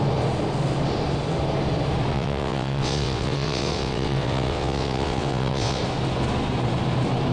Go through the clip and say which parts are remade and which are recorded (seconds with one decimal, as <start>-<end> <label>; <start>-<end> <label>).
0.0-2.1 recorded; 2.1-5.8 remade; 5.8-7.3 recorded